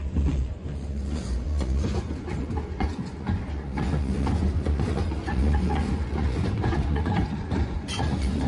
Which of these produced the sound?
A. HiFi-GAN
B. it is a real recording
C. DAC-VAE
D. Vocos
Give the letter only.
D